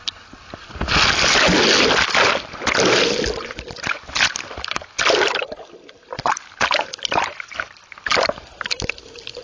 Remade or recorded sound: recorded